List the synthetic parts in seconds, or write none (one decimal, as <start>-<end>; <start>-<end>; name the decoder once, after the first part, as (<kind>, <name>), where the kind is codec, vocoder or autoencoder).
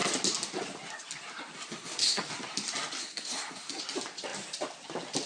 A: 1.7-2.2 (codec, SNAC); 3.0-3.8